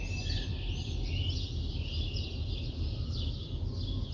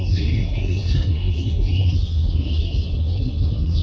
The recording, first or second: first